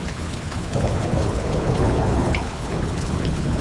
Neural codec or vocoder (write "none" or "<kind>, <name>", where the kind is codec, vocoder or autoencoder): codec, HILCodec